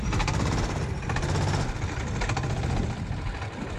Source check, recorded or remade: recorded